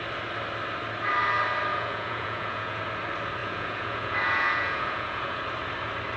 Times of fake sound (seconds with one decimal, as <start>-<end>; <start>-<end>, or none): 1.7-2.8; 3.4-5.4